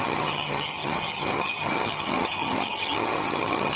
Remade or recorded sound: remade